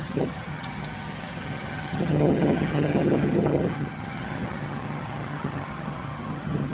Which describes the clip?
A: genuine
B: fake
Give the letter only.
B